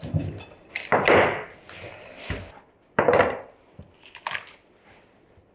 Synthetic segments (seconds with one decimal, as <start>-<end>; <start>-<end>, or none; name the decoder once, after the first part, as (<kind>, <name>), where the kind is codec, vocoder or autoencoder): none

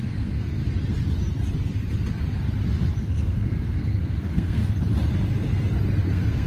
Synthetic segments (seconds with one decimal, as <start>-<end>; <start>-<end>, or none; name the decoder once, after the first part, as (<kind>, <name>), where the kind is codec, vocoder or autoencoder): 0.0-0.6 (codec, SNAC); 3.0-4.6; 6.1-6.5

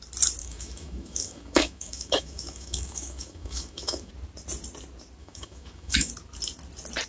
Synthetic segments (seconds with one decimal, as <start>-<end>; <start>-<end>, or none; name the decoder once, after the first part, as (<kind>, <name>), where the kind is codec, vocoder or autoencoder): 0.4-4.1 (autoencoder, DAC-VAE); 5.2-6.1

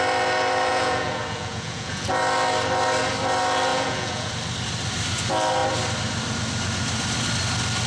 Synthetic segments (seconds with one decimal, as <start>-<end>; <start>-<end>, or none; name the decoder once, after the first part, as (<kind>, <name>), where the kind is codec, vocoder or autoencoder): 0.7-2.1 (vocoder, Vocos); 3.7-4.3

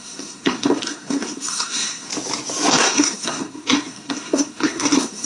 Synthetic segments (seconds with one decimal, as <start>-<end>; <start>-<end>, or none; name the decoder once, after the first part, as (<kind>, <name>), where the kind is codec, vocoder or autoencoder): 0.0-2.1 (codec, SNAC); 2.7-5.3

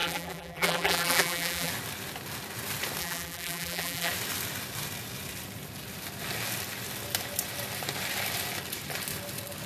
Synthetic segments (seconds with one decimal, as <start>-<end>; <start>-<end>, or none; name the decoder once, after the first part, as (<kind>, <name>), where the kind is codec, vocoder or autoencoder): 0.0-1.7 (vocoder, BigVGAN v2); 3.0-4.1

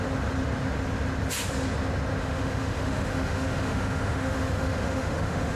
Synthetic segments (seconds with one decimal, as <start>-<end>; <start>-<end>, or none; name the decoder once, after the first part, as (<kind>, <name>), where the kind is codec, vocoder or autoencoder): 2.2-5.6 (autoencoder, DAC-VAE)